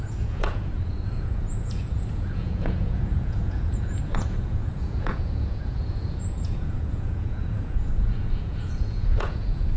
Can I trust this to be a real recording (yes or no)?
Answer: no